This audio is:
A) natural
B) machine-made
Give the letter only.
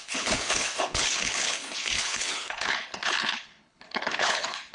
B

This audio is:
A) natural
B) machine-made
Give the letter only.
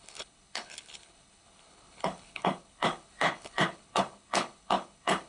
B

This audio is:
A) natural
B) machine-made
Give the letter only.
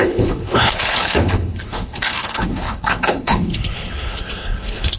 B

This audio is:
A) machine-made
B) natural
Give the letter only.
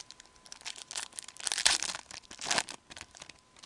B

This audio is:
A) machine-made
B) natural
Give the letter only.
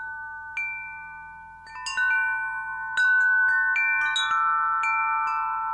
B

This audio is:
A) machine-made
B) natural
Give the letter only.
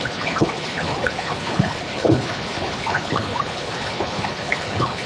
A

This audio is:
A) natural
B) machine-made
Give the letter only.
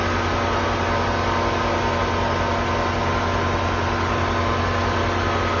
A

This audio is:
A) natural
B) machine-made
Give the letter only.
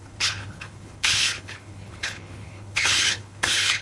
B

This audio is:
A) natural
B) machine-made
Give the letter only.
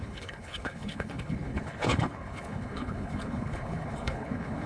B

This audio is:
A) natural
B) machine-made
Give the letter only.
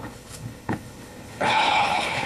B